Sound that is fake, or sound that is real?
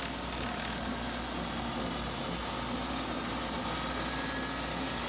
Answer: real